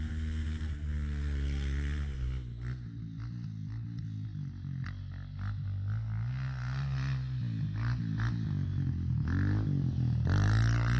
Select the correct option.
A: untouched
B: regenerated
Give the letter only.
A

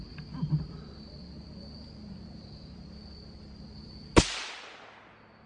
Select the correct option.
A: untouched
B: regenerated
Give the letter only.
A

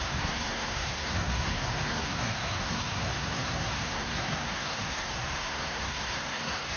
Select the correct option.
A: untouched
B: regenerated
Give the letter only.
B